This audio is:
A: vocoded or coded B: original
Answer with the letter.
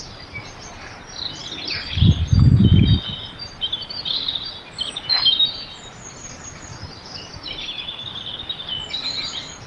B